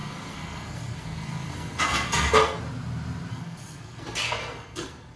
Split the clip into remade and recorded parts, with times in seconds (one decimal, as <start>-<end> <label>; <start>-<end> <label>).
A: 0.0-2.6 remade; 2.6-3.3 recorded; 3.3-5.2 remade